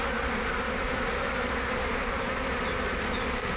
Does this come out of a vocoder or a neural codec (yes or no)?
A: no